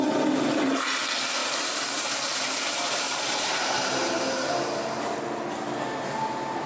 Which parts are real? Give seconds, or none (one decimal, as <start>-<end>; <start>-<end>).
0.0-1.4; 5.2-6.7